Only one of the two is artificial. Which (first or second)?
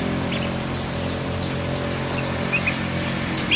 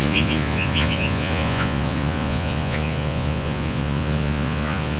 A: second